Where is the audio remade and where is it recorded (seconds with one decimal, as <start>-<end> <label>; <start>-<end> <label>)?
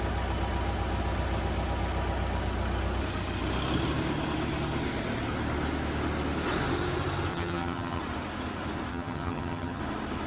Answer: 0.0-7.3 recorded; 7.3-8.0 remade; 8.0-8.9 recorded; 8.9-9.8 remade; 9.8-10.3 recorded